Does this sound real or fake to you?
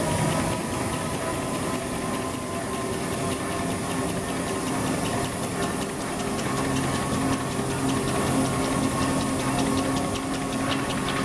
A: real